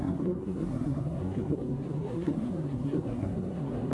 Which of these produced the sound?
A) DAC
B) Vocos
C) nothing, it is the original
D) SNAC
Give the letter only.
D